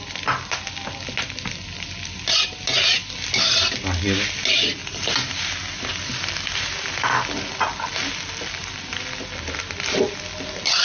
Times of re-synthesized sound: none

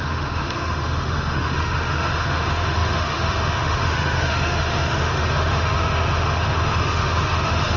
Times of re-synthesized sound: 0.0-7.8

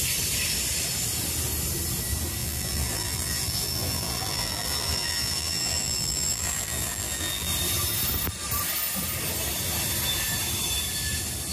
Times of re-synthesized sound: 2.4-7.5

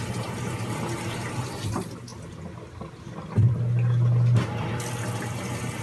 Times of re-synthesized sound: none

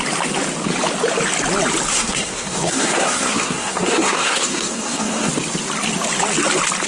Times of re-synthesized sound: 1.9-5.3